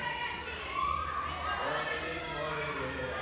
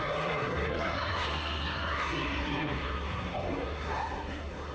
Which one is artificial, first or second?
second